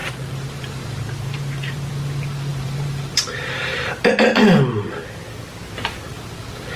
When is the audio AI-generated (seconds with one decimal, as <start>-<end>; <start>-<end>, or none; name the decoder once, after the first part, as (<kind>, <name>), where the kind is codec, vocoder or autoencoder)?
0.0-1.9 (vocoder, BigVGAN v2); 2.5-3.2